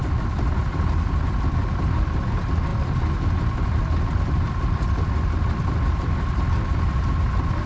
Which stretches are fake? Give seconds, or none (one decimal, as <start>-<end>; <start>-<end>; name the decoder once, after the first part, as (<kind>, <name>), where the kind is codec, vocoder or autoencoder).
none